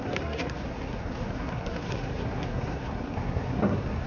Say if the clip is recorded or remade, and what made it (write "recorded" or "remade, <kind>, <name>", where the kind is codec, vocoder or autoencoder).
remade, codec, SNAC